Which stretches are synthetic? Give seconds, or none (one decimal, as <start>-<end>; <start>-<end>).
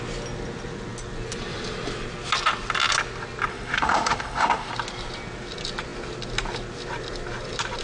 3.5-4.7